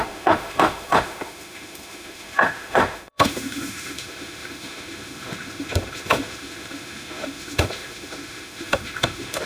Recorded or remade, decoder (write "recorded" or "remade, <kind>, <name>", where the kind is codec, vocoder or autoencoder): remade, autoencoder, DAC-VAE